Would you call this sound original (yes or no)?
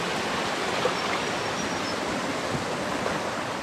yes